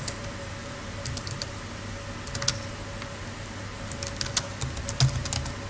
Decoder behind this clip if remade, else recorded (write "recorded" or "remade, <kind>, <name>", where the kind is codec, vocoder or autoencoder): recorded